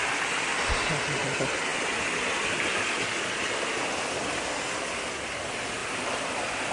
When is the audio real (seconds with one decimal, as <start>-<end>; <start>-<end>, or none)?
0.0-6.7